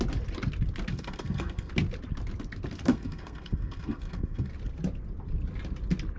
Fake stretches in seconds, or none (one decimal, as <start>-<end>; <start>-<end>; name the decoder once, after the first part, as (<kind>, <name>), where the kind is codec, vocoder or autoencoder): 0.9-1.7 (codec, SNAC); 2.9-4.5